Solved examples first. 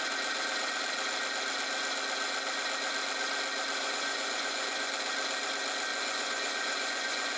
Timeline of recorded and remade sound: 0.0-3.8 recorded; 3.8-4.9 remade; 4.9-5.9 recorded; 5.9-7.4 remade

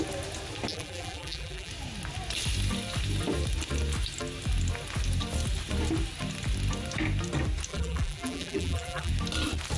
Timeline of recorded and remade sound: 0.0-0.7 recorded; 0.7-1.7 remade; 1.7-7.7 recorded; 7.7-9.1 remade; 9.1-9.8 recorded

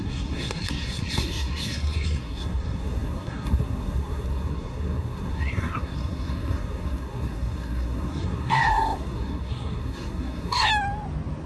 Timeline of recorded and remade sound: 0.0-10.7 remade; 10.7-11.5 recorded

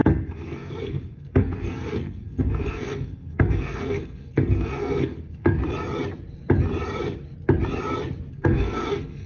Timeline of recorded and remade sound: 0.0-5.6 remade; 5.6-8.3 recorded; 8.3-9.3 remade

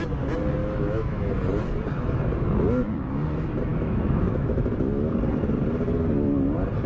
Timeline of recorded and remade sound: 0.0-0.6 recorded; 0.6-1.3 remade; 1.3-3.7 recorded; 3.7-4.7 remade; 4.7-6.9 recorded

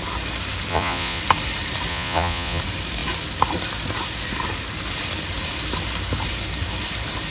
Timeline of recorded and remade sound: 0.0-0.7 recorded; 0.7-1.2 remade; 1.2-1.9 recorded; 1.9-2.6 remade; 2.6-7.3 recorded